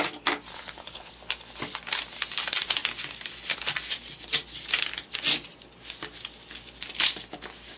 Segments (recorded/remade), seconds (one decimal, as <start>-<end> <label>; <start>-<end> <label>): 0.0-0.5 recorded; 0.5-1.1 remade; 1.1-7.8 recorded